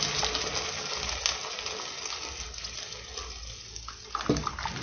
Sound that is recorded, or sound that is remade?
recorded